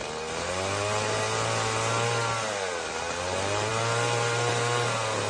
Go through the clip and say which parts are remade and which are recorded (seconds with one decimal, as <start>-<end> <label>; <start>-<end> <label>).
0.0-5.3 recorded